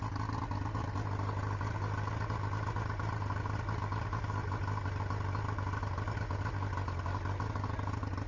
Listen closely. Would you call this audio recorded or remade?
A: recorded